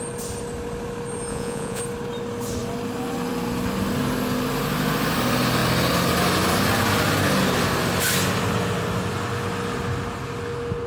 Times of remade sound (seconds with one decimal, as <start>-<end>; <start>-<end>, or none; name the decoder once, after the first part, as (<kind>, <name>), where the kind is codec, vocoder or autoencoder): 1.3-1.8 (vocoder, Vocos)